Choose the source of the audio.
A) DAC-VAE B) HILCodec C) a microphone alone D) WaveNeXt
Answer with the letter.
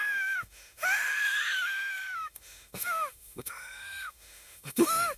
A